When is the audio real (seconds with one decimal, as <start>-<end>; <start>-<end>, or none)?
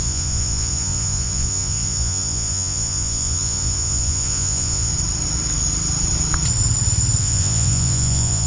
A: 4.9-7.2